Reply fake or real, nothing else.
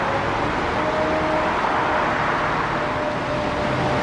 real